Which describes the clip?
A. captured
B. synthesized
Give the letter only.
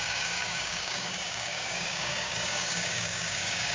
B